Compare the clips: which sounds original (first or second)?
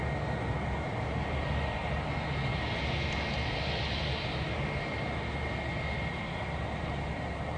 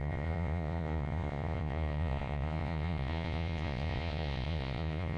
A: first